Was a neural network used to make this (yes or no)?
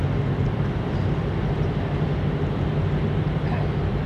no